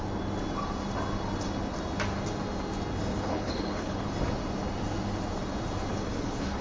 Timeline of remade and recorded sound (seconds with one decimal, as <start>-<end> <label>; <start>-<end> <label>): 0.0-3.1 recorded; 3.1-4.1 remade; 4.1-5.9 recorded; 5.9-6.6 remade